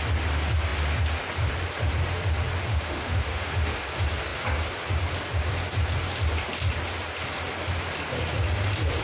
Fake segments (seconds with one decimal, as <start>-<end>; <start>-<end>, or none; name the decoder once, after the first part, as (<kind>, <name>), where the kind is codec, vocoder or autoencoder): 2.7-3.5 (autoencoder, DAC-VAE)